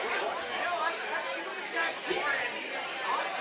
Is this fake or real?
real